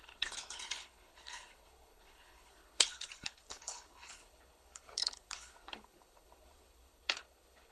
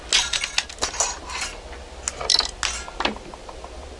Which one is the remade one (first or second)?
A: first